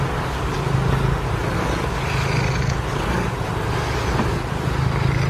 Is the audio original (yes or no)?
yes